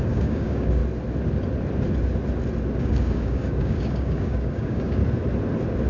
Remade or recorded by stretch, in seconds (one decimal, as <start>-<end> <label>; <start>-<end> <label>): 0.0-0.8 remade; 0.8-2.8 recorded; 2.8-5.0 remade; 5.0-5.9 recorded

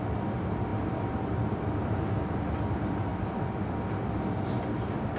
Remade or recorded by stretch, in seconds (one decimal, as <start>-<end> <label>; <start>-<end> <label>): 0.0-5.2 recorded

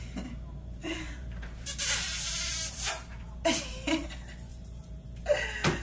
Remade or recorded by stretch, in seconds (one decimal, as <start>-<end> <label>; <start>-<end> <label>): 0.0-0.8 recorded; 0.8-4.1 remade; 4.1-4.5 recorded; 4.5-5.2 remade; 5.2-5.8 recorded

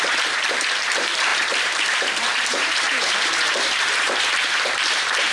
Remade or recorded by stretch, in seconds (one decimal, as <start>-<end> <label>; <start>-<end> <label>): 0.0-5.3 remade